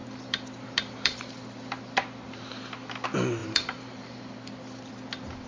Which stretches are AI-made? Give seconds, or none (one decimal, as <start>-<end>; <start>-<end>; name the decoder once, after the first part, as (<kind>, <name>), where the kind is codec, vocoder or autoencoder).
0.0-2.6 (vocoder, BigVGAN v2); 3.4-4.9